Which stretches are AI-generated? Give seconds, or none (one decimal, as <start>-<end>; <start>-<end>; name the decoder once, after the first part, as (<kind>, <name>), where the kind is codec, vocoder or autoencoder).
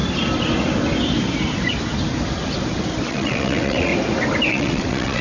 3.1-3.9 (vocoder, WaveNeXt); 4.5-5.2